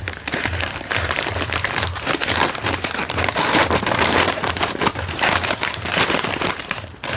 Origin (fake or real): fake